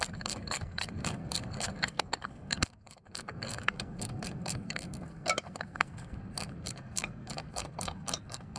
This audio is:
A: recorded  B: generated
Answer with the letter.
B